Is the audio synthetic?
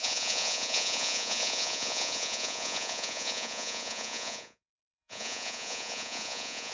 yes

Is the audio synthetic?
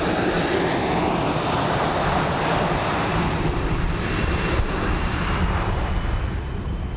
no